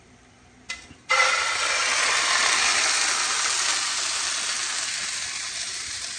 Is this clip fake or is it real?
real